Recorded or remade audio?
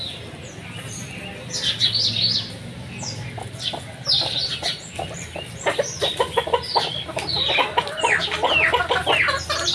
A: recorded